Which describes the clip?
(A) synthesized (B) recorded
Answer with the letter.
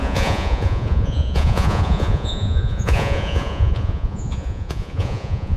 A